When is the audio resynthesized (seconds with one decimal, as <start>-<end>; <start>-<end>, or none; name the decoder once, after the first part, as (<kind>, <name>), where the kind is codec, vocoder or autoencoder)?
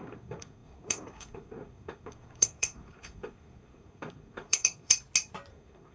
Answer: 0.0-4.9 (codec, SNAC); 5.5-5.9